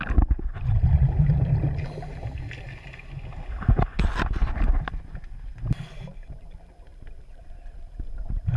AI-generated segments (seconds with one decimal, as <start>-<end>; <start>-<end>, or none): none

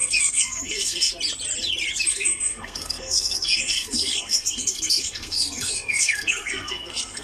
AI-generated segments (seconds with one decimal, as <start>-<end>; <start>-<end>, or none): 0.0-1.1; 2.1-7.2

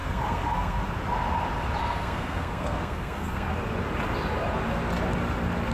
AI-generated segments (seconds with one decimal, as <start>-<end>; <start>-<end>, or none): 0.0-0.8; 1.8-3.5